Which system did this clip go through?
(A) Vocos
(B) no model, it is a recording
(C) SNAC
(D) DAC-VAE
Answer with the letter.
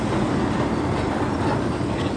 B